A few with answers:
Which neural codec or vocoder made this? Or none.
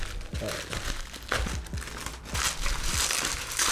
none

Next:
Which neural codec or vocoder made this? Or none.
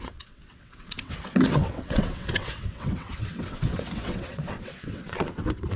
vocoder, WaveNeXt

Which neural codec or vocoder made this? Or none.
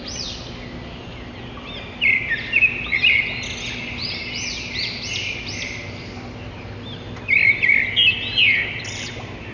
none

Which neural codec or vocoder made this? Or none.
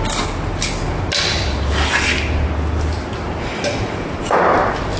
none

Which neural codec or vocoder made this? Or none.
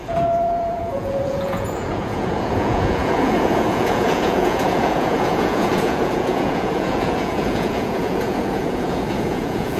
vocoder, Vocos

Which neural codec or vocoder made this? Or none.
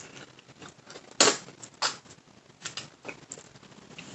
none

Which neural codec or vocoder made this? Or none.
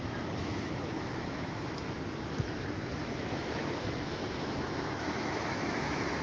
autoencoder, DAC-VAE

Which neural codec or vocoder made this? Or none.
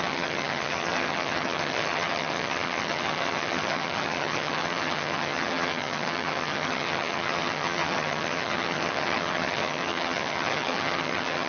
vocoder, HiFi-GAN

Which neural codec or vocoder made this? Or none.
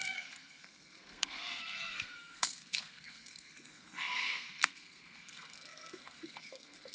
codec, SNAC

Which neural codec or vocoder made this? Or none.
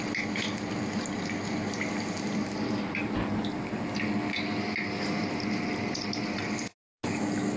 none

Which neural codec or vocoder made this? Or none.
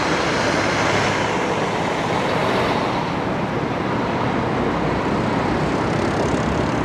vocoder, BigVGAN v2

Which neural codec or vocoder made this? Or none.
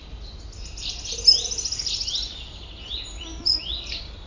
none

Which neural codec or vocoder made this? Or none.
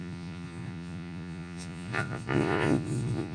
vocoder, Vocos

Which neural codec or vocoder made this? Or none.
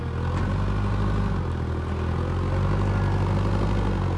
none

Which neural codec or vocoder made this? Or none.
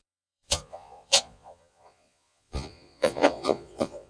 vocoder, Vocos